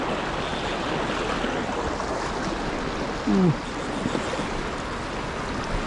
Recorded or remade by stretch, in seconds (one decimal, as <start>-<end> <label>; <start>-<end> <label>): 0.0-5.9 recorded